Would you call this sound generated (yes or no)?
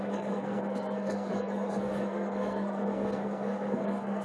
yes